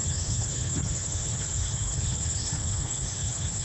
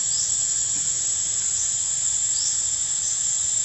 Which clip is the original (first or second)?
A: second